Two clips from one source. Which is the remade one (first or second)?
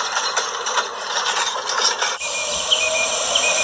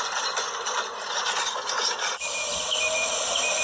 first